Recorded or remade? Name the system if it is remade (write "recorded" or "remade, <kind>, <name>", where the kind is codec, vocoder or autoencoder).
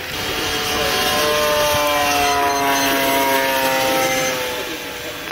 recorded